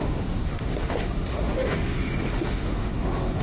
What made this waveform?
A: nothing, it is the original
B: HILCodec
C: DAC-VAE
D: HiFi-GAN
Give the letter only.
C